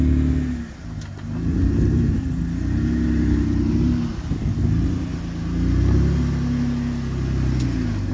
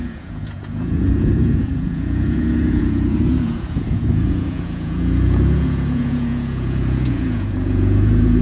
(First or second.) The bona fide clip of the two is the first